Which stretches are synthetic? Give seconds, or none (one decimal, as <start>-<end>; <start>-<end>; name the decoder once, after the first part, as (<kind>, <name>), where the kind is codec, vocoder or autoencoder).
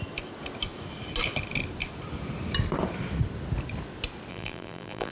4.3-5.1 (vocoder, BigVGAN v2)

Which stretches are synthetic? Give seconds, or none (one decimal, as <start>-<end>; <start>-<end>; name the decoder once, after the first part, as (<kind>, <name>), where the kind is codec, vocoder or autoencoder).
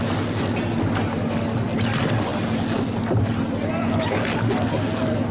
none